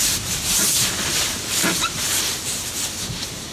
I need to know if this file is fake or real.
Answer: fake